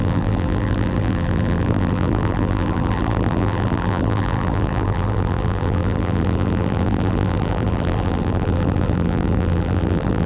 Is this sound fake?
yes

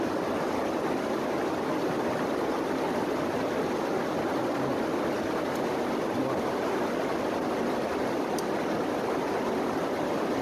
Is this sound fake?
no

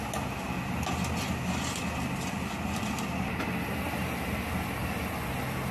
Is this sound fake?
no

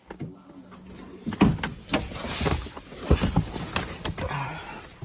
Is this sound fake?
no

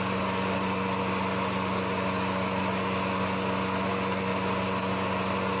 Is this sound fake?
no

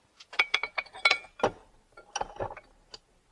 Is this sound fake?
no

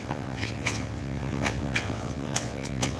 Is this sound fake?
yes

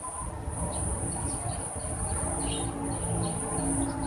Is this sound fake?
no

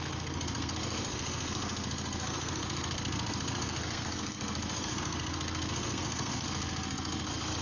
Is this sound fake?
yes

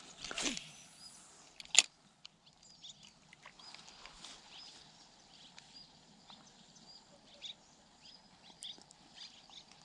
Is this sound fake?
no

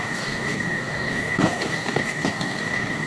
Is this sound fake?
yes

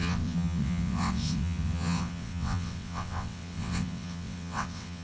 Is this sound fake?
yes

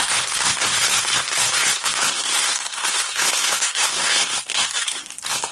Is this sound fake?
yes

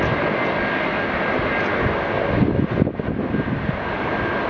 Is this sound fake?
no